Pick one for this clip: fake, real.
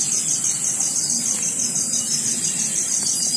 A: real